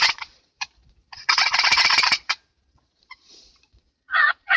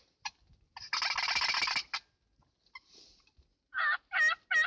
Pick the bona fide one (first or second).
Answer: second